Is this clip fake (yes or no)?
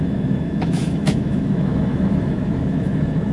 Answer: yes